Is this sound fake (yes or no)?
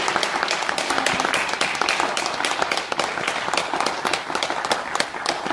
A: no